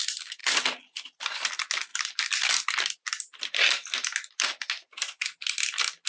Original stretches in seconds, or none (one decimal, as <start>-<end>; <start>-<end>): 0.0-6.1